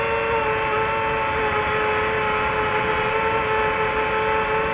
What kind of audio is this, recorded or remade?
recorded